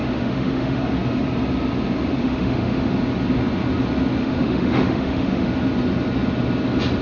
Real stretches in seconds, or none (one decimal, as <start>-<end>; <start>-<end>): 0.8-2.2; 2.9-4.2; 5.5-7.0